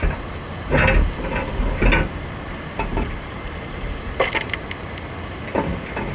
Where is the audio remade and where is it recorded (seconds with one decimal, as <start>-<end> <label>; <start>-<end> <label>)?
0.0-2.9 recorded; 2.9-4.3 remade; 4.3-6.1 recorded